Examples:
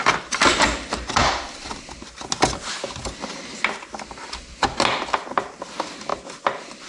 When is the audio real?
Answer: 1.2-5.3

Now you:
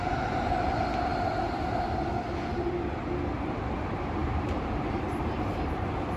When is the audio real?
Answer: 0.0-4.2

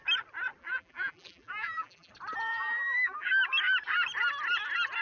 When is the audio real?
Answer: 0.0-0.6; 2.1-2.5; 3.3-5.0

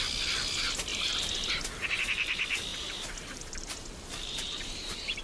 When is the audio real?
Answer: 0.0-0.9; 1.5-2.7

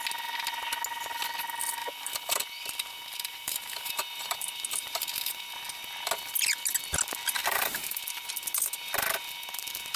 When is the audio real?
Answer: 0.0-1.8; 2.4-3.1; 5.5-7.4; 8.3-10.0

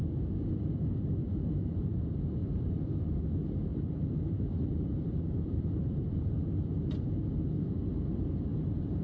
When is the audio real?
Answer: 0.0-1.2; 2.0-2.4; 3.0-3.7; 6.8-8.5

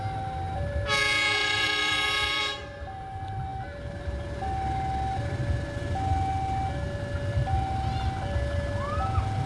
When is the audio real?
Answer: 0.0-1.4; 2.4-9.5